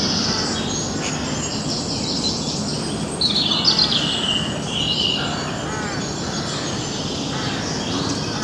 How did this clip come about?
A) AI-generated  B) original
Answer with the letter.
B